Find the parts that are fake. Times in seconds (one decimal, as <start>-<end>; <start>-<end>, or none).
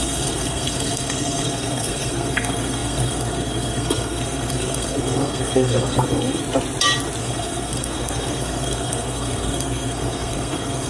0.0-6.4; 7.2-10.9